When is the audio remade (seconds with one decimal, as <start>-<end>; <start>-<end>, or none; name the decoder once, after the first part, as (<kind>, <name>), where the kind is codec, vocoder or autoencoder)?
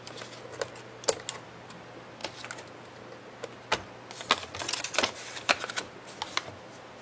none